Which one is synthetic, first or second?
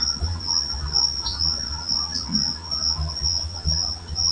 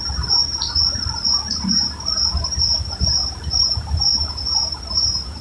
first